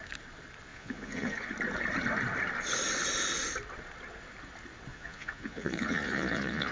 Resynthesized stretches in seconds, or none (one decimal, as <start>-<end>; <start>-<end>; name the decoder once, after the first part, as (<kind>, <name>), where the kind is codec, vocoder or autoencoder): 0.7-1.5 (vocoder, Vocos); 4.9-6.7